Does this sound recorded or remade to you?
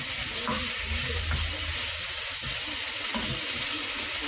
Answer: recorded